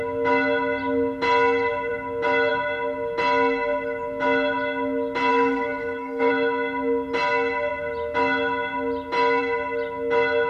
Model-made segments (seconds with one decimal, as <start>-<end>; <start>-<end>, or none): 5.3-6.3